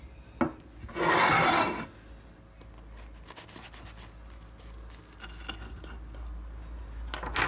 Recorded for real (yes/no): yes